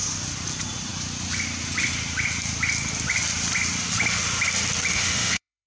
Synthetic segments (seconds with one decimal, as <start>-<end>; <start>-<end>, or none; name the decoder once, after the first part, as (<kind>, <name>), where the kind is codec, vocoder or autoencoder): 4.9-5.7 (autoencoder, DAC-VAE)